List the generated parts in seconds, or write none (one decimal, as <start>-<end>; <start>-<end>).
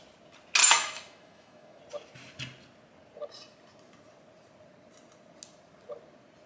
0.6-1.8